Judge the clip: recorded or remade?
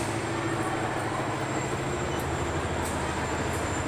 recorded